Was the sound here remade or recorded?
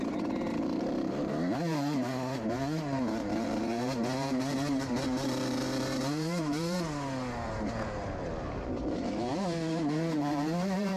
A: remade